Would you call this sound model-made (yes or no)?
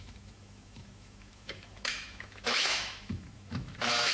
yes